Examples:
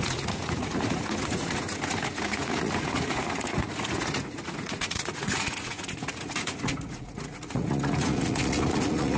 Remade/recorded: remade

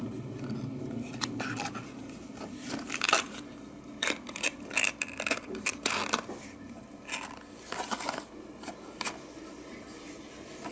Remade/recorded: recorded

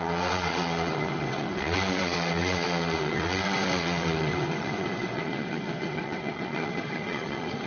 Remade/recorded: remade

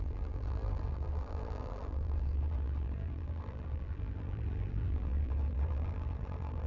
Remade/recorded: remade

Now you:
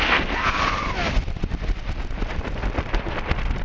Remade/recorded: remade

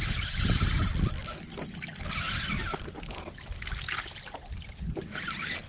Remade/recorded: remade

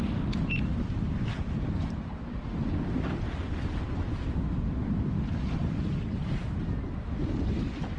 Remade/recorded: recorded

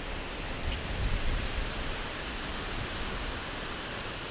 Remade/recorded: recorded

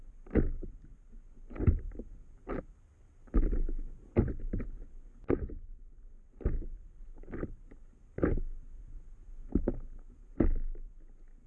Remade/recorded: recorded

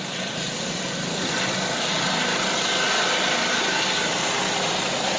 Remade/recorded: recorded